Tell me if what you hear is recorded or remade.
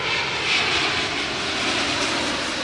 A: recorded